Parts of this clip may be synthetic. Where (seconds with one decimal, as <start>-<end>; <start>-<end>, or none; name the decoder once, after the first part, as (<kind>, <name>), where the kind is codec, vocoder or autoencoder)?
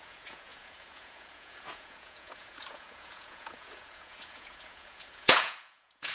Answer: 0.0-6.1 (vocoder, Vocos)